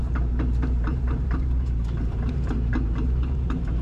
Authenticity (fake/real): fake